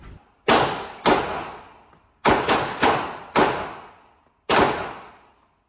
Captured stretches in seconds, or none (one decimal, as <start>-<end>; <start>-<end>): 0.0-5.7